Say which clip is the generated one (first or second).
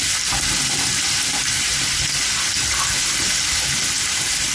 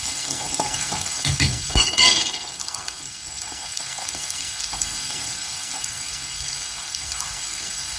second